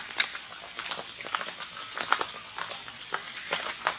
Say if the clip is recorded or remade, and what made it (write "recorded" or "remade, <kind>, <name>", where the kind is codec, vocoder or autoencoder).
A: recorded